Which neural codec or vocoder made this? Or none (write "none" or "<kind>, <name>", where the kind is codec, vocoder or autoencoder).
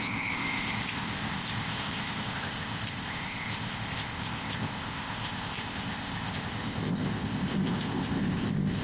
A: codec, ZipCodec